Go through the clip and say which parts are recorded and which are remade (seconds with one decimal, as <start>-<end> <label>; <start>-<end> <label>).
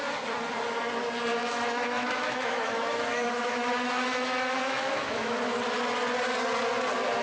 0.0-1.3 recorded; 1.3-5.4 remade; 5.4-7.2 recorded